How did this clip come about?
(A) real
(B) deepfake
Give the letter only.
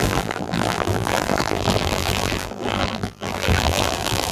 B